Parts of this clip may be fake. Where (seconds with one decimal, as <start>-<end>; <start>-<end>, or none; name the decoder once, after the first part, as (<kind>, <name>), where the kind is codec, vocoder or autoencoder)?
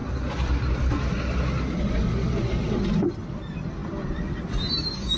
none